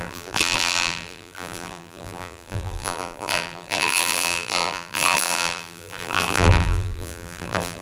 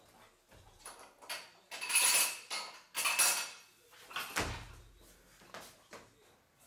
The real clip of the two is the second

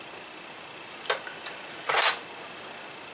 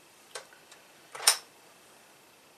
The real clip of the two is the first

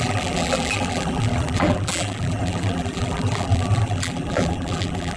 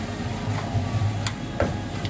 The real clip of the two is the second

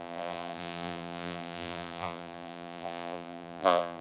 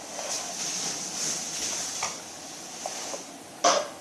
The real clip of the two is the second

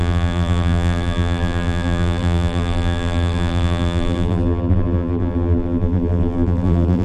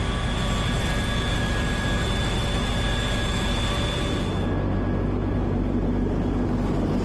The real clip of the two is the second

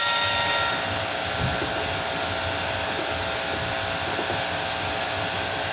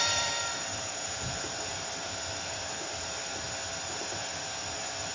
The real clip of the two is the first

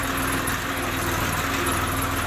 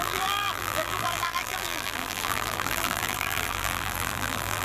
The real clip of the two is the first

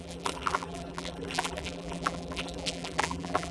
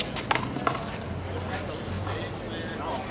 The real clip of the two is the second